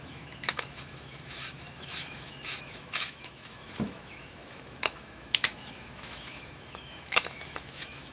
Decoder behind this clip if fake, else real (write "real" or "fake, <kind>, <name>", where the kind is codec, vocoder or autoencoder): fake, autoencoder, DAC-VAE